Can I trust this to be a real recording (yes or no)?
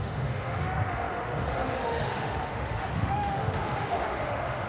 no